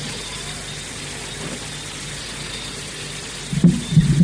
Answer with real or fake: real